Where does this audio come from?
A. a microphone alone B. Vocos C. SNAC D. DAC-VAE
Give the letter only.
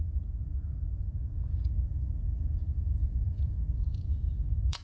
B